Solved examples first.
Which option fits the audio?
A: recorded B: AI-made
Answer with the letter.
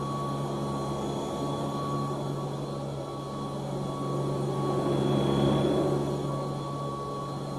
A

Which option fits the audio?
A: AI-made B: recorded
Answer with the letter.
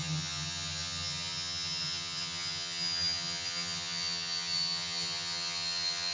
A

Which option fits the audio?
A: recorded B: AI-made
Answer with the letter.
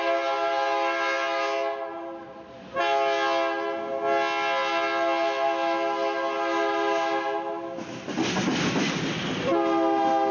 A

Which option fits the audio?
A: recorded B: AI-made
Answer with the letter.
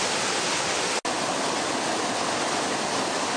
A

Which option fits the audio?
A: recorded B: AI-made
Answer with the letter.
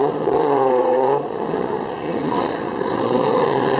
B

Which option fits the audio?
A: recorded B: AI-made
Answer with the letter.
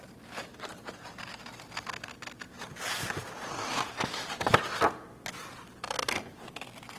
A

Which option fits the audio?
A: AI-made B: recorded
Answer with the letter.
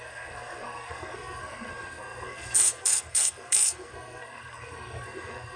A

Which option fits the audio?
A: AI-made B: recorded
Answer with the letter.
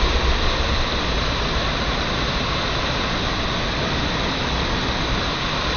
B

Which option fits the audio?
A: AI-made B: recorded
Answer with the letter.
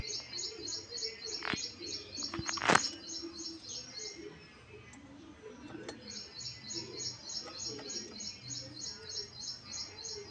B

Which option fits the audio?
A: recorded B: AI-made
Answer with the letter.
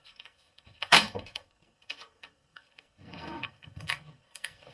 B